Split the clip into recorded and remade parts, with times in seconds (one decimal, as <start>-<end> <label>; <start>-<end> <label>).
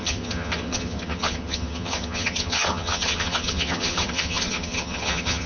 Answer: 0.0-5.5 remade